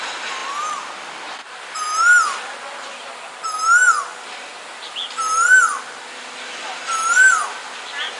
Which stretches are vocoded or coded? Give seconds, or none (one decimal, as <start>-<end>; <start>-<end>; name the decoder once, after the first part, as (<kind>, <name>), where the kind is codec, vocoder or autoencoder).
0.4-3.3 (vocoder, BigVGAN v2)

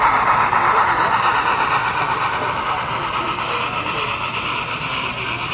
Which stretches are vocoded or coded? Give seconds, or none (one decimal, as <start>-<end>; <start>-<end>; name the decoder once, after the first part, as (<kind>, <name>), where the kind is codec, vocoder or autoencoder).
none

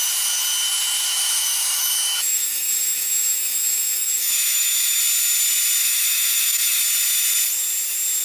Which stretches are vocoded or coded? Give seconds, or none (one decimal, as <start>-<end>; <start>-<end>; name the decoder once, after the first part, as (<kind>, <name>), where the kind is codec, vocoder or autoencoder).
1.1-5.0 (autoencoder, DAC-VAE); 5.8-6.8

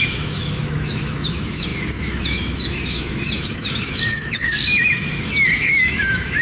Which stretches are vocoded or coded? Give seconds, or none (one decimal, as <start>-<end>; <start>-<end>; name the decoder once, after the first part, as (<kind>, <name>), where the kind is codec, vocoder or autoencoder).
0.0-6.4 (autoencoder, DAC-VAE)

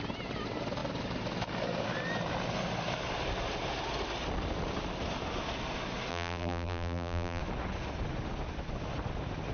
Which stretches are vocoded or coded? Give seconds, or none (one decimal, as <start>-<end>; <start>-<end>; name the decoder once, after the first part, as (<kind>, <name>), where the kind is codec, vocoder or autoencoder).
6.1-7.4 (vocoder, BigVGAN v2)

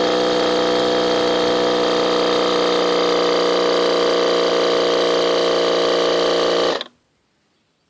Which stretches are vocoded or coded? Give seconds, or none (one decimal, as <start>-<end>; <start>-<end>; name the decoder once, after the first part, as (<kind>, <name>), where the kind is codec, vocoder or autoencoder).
none